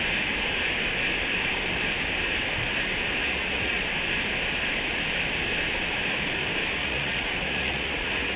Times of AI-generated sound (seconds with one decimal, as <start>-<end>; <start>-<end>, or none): 3.2-3.8; 6.8-8.4